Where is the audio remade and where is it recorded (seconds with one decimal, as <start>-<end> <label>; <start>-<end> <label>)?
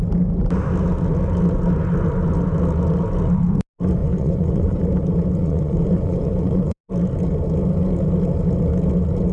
0.0-4.0 recorded; 4.0-4.8 remade; 4.8-5.4 recorded; 5.4-6.8 remade; 6.8-9.3 recorded